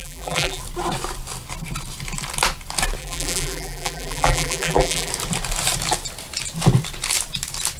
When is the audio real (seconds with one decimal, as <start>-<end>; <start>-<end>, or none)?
0.6-3.0; 5.1-7.8